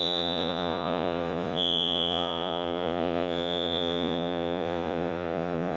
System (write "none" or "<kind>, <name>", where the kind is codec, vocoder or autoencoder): vocoder, Vocos